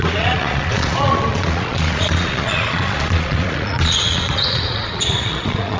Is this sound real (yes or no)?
no